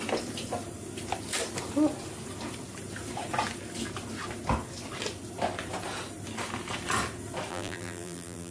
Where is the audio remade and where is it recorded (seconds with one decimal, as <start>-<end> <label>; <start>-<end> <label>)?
0.0-7.5 recorded; 7.5-8.5 remade